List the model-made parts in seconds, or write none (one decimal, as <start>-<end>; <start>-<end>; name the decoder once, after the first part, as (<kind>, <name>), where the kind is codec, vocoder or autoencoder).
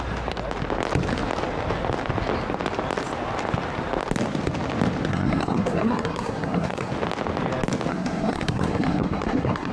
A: 5.1-6.9 (codec, SNAC); 7.9-9.7